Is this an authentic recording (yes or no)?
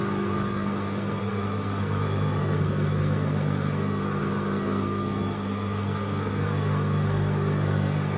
no